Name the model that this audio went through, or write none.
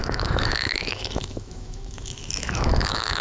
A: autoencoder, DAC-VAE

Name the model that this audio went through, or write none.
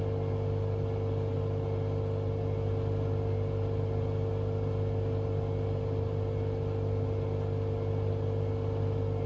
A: none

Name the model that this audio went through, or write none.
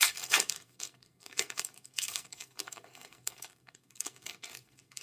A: codec, SNAC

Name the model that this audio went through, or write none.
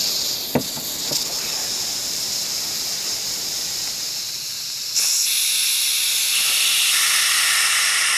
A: none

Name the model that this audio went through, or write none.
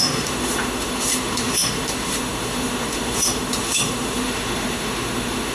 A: autoencoder, DAC-VAE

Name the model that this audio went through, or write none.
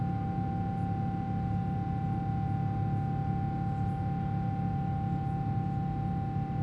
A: none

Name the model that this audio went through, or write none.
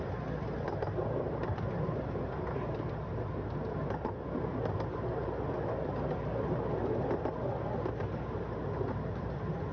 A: none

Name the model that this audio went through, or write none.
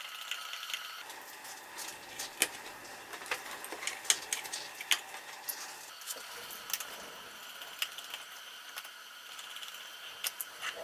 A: none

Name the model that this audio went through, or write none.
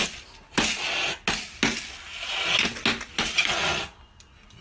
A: none